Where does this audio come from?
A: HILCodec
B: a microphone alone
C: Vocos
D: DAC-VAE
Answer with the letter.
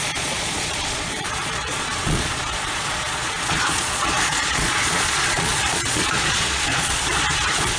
C